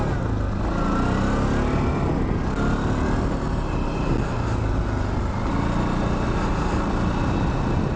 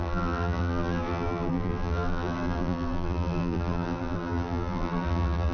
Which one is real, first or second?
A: first